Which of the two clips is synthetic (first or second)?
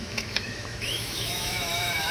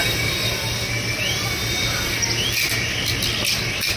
first